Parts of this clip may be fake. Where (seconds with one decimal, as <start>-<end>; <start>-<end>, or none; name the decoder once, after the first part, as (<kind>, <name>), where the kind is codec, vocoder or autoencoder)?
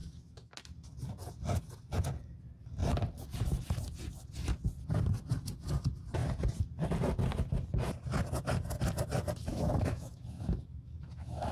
0.0-0.6 (autoencoder, DAC-VAE); 9.5-11.5